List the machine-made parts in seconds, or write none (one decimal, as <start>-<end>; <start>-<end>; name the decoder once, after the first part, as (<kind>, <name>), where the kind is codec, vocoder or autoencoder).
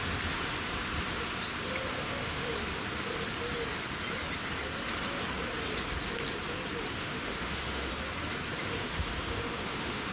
1.9-2.5 (autoencoder, DAC-VAE); 7.0-7.9; 8.6-10.1